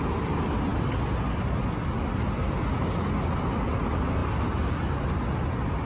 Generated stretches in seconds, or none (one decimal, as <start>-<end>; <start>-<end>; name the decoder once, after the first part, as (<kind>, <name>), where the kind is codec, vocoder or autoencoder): none